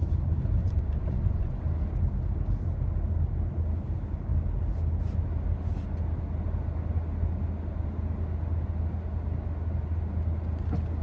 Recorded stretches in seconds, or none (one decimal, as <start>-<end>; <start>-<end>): 0.0-0.6; 1.6-11.0